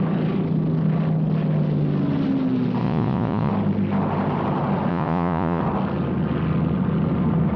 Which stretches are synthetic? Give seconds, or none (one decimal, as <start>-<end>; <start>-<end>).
2.8-3.5; 4.9-5.6